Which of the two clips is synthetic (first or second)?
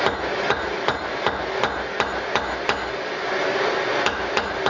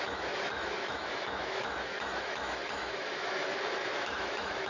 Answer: second